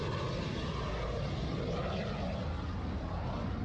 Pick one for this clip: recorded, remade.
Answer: recorded